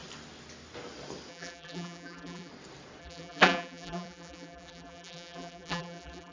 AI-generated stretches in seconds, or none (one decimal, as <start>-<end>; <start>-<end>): 1.3-2.5; 3.0-6.3